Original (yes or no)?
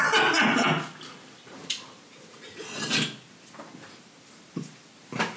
yes